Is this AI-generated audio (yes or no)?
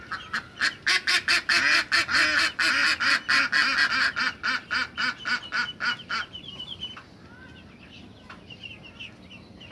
no